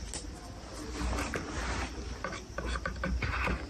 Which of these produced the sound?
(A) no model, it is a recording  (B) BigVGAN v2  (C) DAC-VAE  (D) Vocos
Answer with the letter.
A